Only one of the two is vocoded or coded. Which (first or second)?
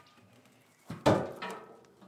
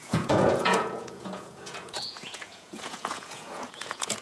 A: second